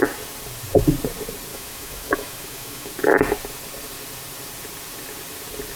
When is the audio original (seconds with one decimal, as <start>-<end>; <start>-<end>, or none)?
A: 0.0-1.5; 2.9-5.8